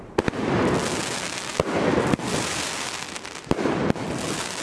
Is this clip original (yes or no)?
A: yes